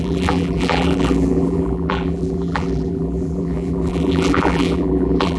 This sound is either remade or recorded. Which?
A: remade